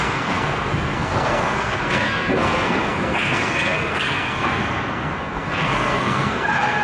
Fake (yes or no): yes